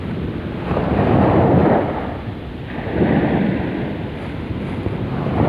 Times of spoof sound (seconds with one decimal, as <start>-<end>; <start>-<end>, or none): none